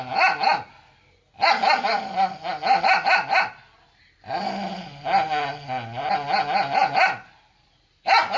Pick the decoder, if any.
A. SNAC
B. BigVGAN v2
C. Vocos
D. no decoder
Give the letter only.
D